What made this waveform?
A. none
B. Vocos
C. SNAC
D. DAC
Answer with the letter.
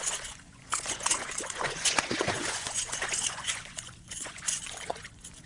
B